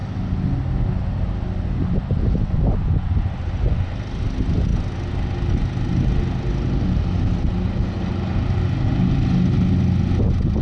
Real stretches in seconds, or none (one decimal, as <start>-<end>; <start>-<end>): 0.0-10.6